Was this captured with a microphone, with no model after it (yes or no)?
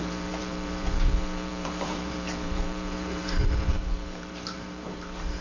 no